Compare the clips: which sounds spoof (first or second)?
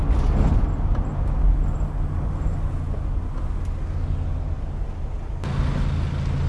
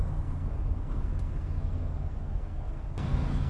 second